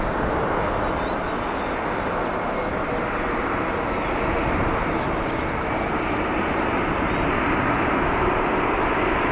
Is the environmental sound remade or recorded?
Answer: recorded